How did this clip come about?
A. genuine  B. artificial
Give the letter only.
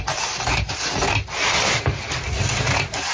A